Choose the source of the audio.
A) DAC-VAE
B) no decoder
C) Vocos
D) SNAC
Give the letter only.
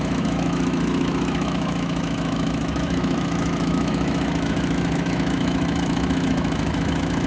A